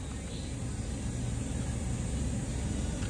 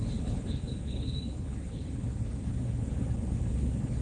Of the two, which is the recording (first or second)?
first